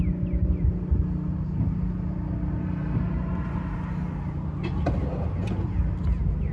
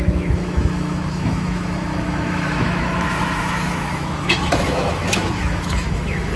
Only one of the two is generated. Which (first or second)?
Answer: second